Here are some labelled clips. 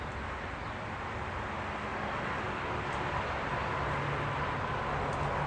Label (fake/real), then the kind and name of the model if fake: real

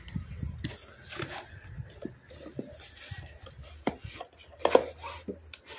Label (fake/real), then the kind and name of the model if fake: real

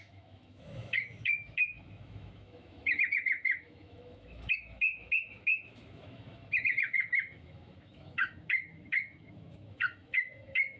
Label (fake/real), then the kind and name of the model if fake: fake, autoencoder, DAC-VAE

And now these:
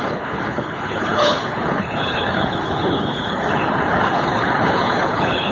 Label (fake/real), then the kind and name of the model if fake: fake, codec, HILCodec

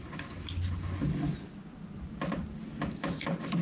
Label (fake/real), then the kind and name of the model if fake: real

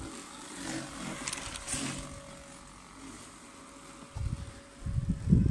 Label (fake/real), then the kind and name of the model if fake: real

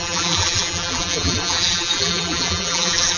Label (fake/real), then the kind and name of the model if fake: fake, vocoder, BigVGAN v2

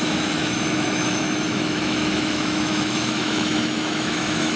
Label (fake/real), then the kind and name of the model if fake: fake, autoencoder, DAC-VAE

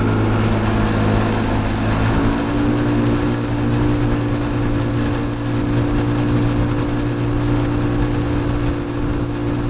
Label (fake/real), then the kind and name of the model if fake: real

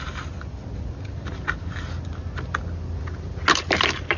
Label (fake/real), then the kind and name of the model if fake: real